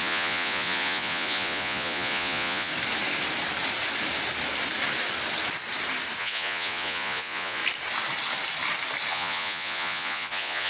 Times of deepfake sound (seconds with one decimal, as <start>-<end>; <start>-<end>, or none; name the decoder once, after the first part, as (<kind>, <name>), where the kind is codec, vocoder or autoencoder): 0.0-2.7 (vocoder, Vocos); 6.2-7.6; 9.1-10.7